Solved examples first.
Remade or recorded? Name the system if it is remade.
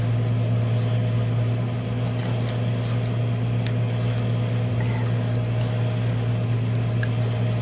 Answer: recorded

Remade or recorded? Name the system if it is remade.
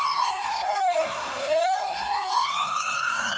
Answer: remade, codec, SNAC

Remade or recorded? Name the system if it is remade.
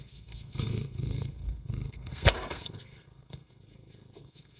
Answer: remade, codec, SNAC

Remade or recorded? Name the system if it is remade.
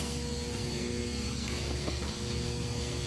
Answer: remade, codec, SNAC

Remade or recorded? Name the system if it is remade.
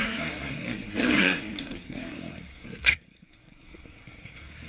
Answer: remade, codec, SNAC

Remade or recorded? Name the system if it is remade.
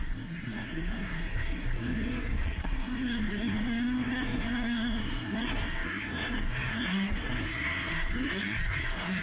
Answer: remade, codec, SNAC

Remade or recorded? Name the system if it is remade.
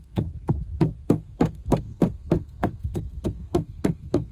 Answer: remade, codec, SNAC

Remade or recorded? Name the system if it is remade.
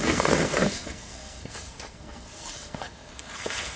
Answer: remade, codec, SNAC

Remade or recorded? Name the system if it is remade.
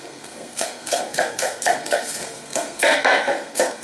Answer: remade, codec, SNAC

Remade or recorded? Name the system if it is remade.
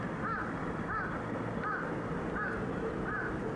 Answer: recorded